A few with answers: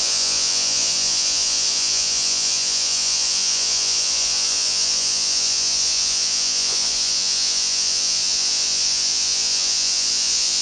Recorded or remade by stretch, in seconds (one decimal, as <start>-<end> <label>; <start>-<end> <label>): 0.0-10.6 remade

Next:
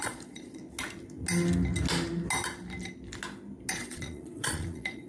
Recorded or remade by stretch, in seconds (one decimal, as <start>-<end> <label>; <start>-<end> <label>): 0.0-0.6 remade; 0.6-3.7 recorded; 3.7-5.1 remade

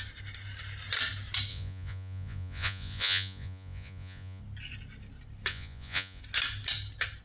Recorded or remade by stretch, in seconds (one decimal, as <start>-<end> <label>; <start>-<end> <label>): 0.0-1.5 recorded; 1.5-4.4 remade; 4.4-5.5 recorded; 5.5-6.2 remade; 6.2-7.2 recorded

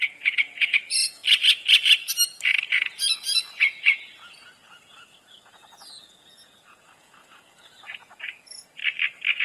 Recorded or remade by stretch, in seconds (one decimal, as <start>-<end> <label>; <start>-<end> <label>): 0.0-1.2 remade; 1.2-2.7 recorded; 2.7-8.8 remade; 8.8-9.4 recorded